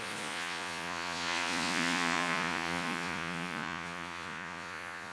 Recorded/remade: remade